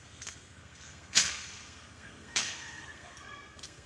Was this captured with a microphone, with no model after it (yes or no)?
no